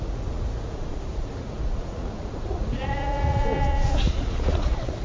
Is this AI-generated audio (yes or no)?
yes